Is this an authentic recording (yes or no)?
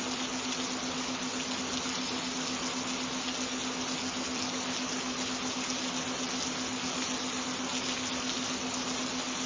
yes